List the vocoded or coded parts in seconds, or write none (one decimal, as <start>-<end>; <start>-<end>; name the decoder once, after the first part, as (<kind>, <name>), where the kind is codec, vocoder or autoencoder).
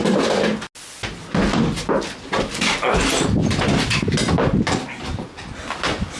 0.0-0.5 (vocoder, BigVGAN v2)